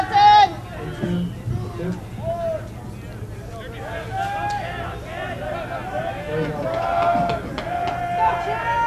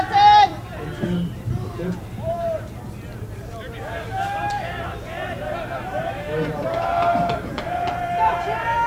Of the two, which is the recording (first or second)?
first